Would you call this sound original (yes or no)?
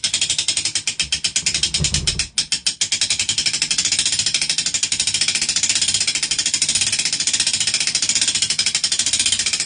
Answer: yes